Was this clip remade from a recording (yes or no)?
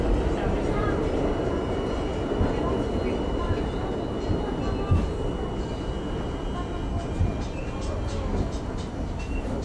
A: no